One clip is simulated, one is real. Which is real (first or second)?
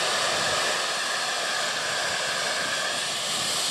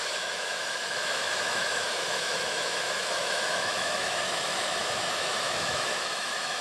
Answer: first